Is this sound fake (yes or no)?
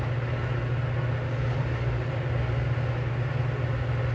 no